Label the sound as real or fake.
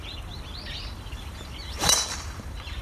fake